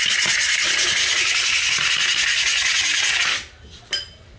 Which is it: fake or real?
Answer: real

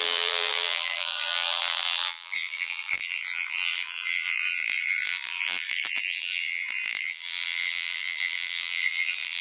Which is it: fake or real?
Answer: fake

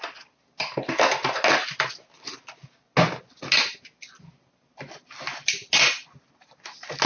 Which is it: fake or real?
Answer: real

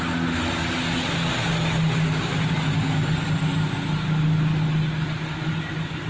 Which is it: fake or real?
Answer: real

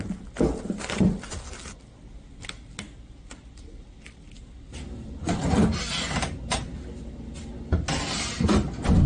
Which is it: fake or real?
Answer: real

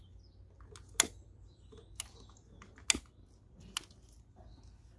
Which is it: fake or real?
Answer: real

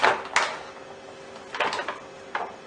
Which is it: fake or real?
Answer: real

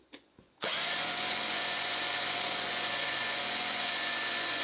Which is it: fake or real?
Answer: fake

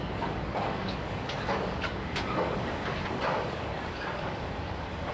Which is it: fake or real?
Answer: fake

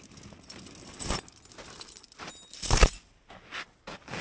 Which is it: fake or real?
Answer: real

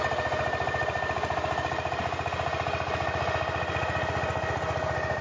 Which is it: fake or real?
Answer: real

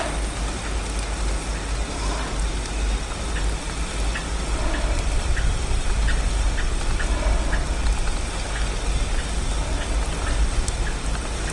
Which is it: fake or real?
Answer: real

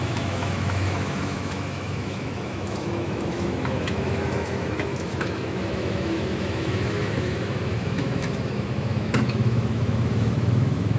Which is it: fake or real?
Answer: fake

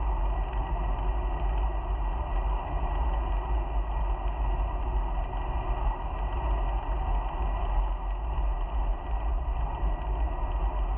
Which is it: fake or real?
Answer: real